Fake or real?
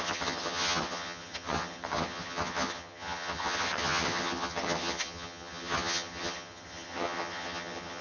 fake